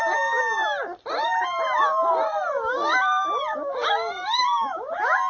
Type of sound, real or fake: real